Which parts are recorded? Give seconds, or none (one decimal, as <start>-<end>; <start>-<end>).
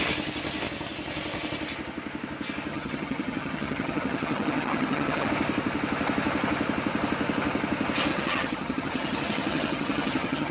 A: 0.0-2.7; 5.3-8.1